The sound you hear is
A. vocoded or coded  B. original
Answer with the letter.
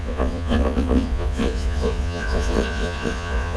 A